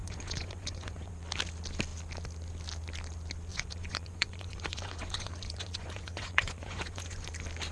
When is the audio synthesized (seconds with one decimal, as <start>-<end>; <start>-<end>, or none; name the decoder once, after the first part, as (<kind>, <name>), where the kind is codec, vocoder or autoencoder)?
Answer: 0.0-1.1 (vocoder, Vocos); 3.5-7.3